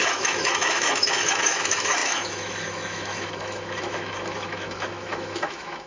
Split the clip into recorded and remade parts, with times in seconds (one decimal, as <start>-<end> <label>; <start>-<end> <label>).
0.0-5.9 remade